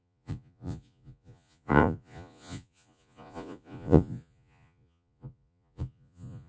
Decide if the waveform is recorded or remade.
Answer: remade